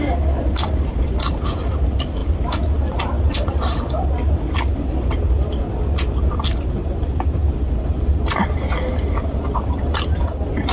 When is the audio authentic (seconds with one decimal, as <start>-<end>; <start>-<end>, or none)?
0.0-10.7